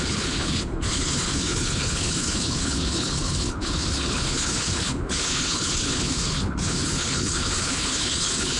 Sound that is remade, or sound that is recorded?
remade